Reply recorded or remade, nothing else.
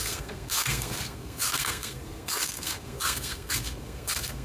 remade